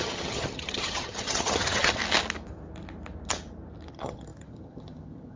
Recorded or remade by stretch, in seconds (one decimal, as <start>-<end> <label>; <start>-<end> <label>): 0.0-2.0 remade; 2.0-3.9 recorded; 3.9-5.4 remade